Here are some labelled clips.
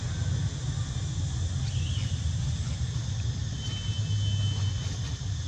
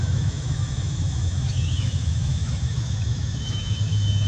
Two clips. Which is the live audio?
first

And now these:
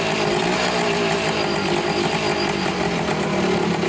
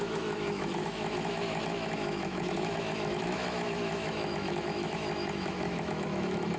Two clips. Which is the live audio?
first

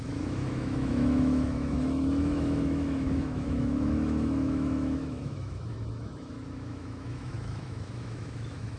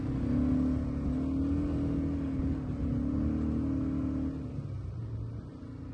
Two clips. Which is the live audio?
second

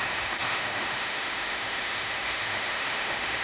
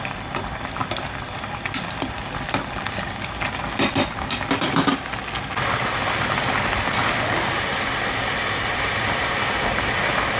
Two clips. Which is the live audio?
second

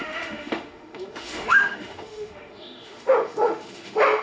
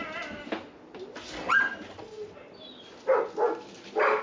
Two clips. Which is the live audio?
second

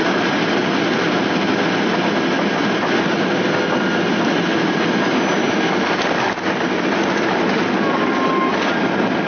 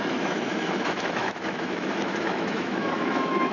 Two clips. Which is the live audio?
first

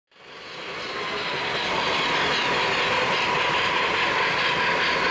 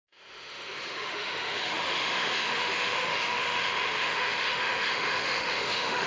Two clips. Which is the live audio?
first